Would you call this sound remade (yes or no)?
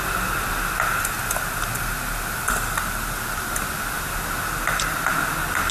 no